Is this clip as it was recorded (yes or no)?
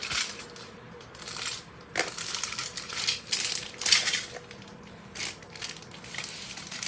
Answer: yes